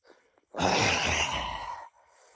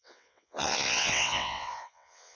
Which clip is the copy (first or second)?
second